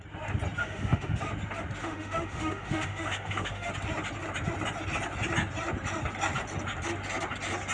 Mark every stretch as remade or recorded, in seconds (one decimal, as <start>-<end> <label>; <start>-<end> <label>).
0.0-0.6 recorded; 0.6-1.2 remade; 1.2-1.8 recorded; 1.8-3.7 remade; 3.7-7.7 recorded